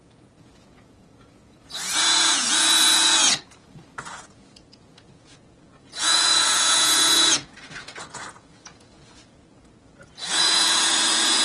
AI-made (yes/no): yes